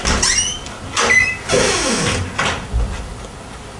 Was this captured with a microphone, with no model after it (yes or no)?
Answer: yes